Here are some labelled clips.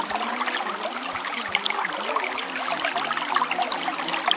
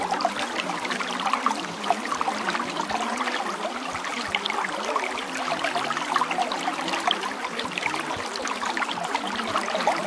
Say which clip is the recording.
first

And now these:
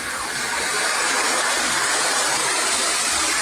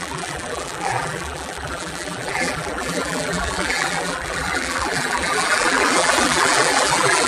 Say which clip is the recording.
first